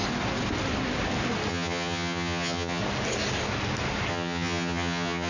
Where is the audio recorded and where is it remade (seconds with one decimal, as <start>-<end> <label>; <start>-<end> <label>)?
0.0-1.5 recorded; 1.5-2.8 remade; 2.8-4.1 recorded; 4.1-5.3 remade